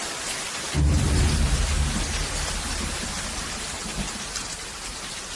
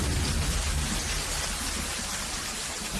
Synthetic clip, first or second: second